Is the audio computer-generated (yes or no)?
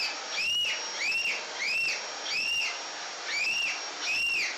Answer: no